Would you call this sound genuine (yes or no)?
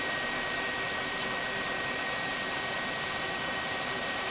no